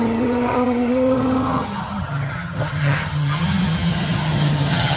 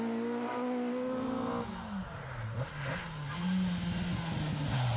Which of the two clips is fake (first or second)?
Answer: first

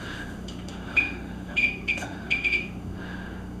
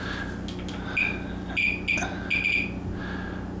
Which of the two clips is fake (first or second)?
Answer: first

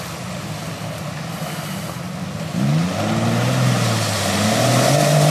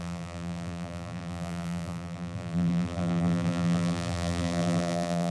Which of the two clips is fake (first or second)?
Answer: second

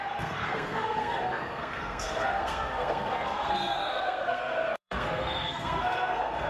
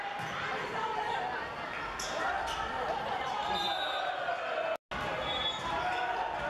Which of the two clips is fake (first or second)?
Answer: first